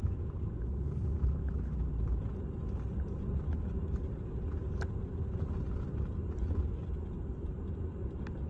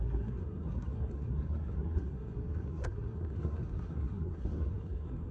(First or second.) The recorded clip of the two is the first